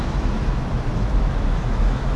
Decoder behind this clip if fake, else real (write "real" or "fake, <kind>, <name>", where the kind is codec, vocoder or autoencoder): fake, autoencoder, DAC-VAE